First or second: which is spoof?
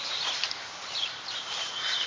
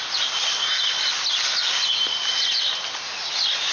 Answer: first